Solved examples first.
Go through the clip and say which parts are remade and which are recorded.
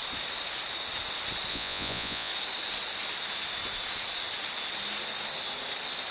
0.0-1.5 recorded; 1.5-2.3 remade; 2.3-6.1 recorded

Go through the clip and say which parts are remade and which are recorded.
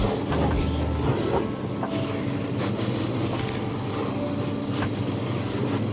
0.0-5.9 recorded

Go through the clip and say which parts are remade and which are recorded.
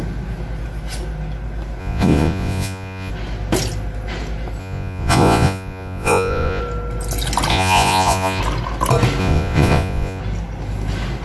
0.0-1.8 recorded; 1.8-3.1 remade; 3.1-4.6 recorded; 4.6-6.6 remade; 6.6-7.5 recorded; 7.5-8.4 remade; 8.4-9.2 recorded; 9.2-10.2 remade; 10.2-11.2 recorded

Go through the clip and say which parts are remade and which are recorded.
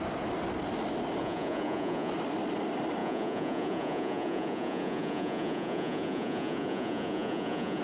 0.0-1.2 recorded; 1.2-2.1 remade; 2.1-3.0 recorded; 3.0-7.8 remade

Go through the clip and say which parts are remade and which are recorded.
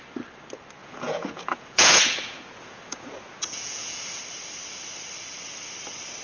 0.0-0.8 recorded; 0.8-4.2 remade; 4.2-6.2 recorded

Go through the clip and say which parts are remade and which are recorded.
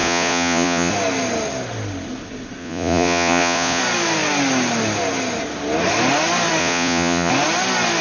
0.0-0.9 remade; 0.9-2.6 recorded; 2.6-3.8 remade; 3.8-6.6 recorded; 6.6-7.3 remade; 7.3-8.0 recorded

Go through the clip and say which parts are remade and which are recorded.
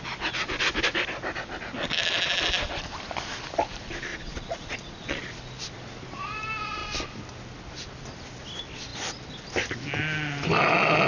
0.0-4.1 recorded; 4.1-5.2 remade; 5.2-11.1 recorded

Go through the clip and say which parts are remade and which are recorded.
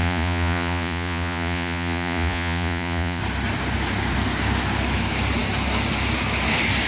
0.0-3.2 remade; 3.2-6.9 recorded